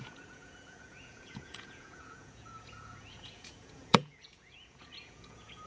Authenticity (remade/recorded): remade